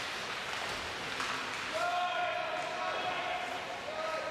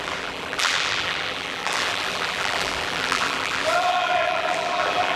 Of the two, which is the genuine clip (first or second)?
first